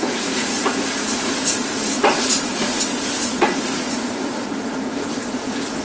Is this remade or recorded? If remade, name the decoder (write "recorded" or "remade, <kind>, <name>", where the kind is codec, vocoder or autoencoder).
remade, vocoder, Vocos